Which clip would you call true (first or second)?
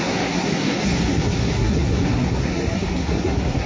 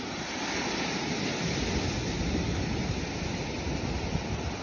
second